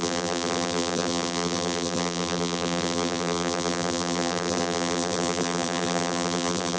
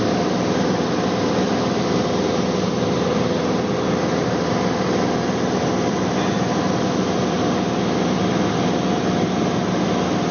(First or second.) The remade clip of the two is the first